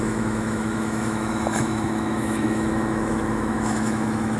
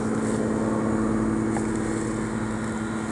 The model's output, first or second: first